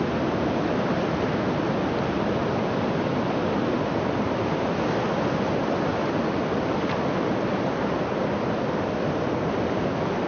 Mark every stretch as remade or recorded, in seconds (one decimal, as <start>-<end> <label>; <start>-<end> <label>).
0.0-10.3 recorded

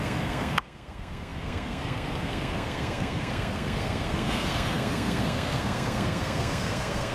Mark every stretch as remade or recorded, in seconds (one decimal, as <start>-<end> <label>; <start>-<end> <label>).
0.0-7.1 remade

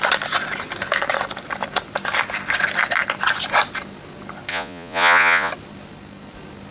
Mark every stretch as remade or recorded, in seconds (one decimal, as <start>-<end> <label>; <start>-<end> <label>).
0.0-4.5 recorded; 4.5-5.5 remade; 5.5-6.7 recorded